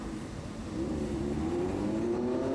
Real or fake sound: fake